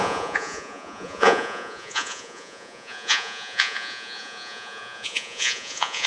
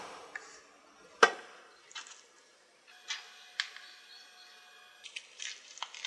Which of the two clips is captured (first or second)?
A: second